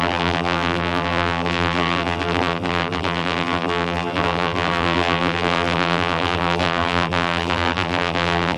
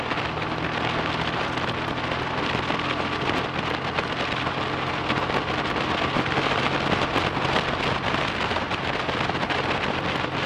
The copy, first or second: first